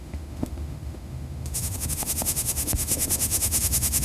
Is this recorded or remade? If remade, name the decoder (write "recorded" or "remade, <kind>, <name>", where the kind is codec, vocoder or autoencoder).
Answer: remade, autoencoder, DAC-VAE